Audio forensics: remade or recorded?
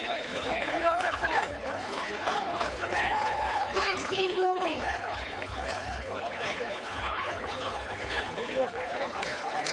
remade